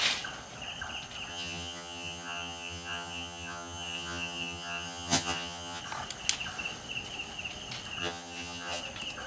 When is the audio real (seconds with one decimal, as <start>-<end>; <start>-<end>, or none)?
0.0-1.3; 5.8-8.0; 8.8-9.3